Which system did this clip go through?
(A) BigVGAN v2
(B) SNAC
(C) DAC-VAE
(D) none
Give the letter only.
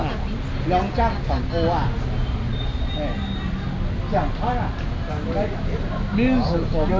D